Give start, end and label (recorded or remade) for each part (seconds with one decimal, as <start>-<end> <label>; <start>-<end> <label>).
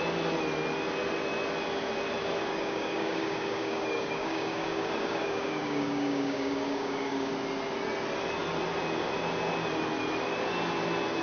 0.0-2.5 recorded; 2.5-7.3 remade; 7.3-11.2 recorded